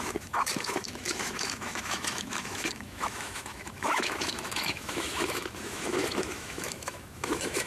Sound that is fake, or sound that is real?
fake